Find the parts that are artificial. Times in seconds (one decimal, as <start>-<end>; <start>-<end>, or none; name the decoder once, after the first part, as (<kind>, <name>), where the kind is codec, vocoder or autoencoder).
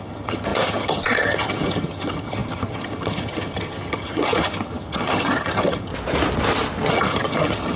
0.0-5.9 (vocoder, HiFi-GAN); 6.9-7.8